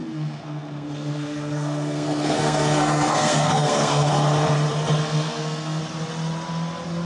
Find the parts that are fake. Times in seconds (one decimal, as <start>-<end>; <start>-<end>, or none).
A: 0.0-4.1; 5.0-5.8